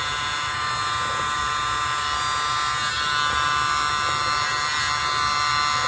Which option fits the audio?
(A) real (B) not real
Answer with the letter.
A